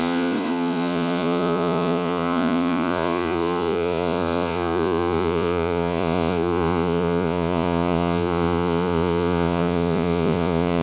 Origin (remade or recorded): remade